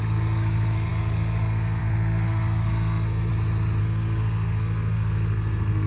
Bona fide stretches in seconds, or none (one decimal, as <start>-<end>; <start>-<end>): 3.3-3.8